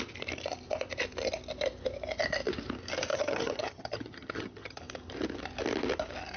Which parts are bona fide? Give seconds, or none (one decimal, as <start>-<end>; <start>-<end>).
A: 0.0-3.1; 4.8-6.4